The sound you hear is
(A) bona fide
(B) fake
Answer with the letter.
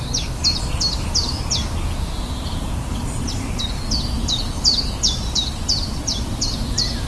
A